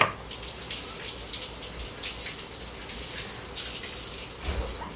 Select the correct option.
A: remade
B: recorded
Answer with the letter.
B